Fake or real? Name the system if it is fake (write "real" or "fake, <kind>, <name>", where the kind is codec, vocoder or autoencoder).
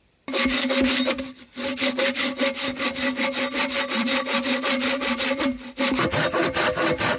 fake, vocoder, BigVGAN v2